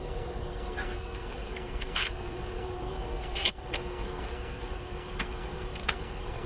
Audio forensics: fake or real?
fake